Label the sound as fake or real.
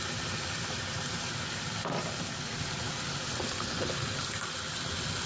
real